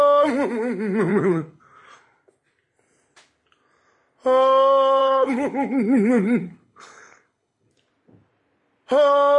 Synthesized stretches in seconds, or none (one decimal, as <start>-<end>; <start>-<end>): 1.1-1.6; 5.0-7.7